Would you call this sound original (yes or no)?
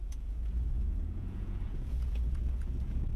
no